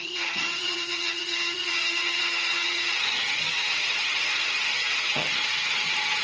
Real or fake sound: fake